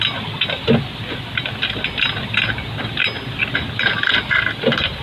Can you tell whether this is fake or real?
real